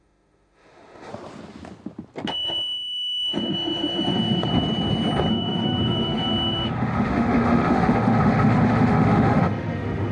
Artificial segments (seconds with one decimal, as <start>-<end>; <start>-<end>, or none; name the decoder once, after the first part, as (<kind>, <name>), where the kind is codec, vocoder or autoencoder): 0.0-1.1 (autoencoder, DAC-VAE); 2.3-4.5; 5.3-10.1

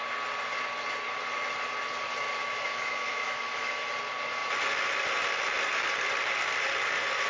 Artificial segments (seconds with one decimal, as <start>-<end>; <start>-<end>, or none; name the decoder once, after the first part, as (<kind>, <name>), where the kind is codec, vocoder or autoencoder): 2.4-3.9 (autoencoder, DAC-VAE)